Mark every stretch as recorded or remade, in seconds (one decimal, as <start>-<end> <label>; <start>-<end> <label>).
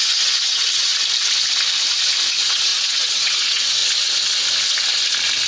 0.0-0.9 remade; 0.9-2.3 recorded; 2.3-3.8 remade; 3.8-5.5 recorded